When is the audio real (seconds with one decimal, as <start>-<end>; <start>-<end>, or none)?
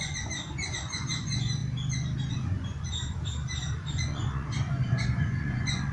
1.6-2.3; 2.9-3.6